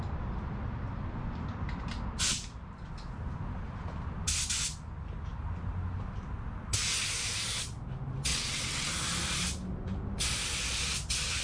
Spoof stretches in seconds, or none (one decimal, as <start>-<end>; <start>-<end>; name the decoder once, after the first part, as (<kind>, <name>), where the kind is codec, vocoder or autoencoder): 8.3-8.9 (vocoder, WaveNeXt)